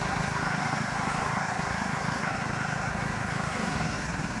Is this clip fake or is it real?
fake